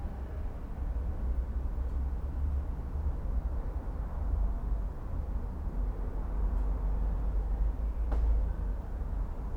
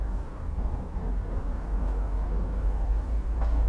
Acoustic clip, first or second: first